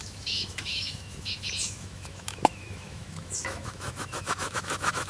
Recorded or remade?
remade